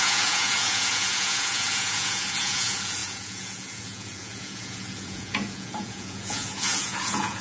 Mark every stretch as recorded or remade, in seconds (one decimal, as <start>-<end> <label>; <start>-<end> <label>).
0.0-7.4 remade

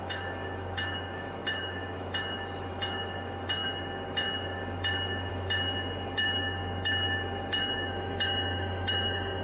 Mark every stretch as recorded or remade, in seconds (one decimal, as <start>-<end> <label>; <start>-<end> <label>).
0.0-9.4 remade

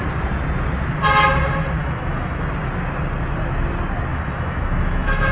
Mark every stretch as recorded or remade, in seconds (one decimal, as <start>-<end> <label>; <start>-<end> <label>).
0.0-1.8 recorded; 1.8-2.4 remade; 2.4-4.1 recorded; 4.1-5.3 remade